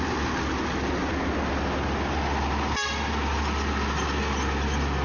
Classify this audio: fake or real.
real